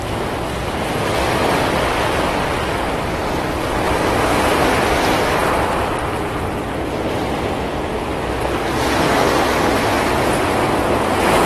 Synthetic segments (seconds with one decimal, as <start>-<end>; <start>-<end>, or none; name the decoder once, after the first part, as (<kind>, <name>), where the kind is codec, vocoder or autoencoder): none